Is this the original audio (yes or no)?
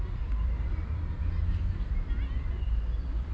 no